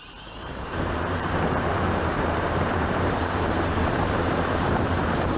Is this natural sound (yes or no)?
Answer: no